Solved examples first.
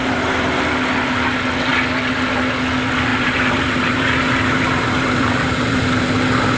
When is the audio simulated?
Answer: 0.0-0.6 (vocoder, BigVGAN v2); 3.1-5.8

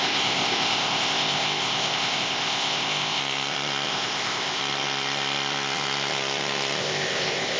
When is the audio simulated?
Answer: 0.0-3.2 (codec, ZipCodec); 3.9-4.6; 6.8-7.6

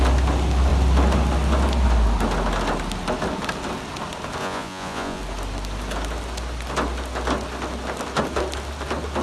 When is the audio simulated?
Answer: 4.4-5.2 (vocoder, Vocos)

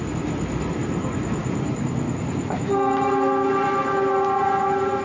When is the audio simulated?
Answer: none

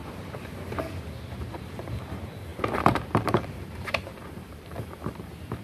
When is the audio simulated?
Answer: 0.8-5.6 (vocoder, BigVGAN v2)

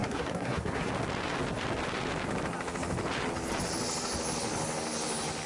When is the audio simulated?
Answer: 0.0-0.9 (codec, SNAC)

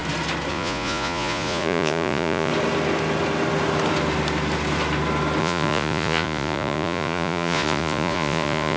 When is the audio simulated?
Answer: 0.5-2.5 (vocoder, Vocos); 5.4-8.8